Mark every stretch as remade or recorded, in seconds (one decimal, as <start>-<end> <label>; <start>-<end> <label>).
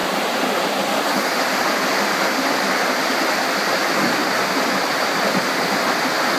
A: 0.0-6.4 recorded